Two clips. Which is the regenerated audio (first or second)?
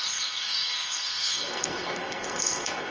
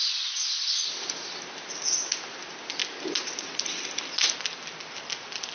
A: first